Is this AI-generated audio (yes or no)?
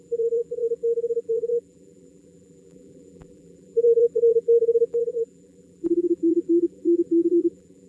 yes